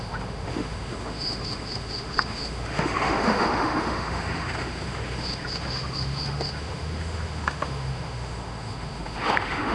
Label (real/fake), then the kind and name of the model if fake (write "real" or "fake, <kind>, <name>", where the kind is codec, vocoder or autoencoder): fake, autoencoder, DAC-VAE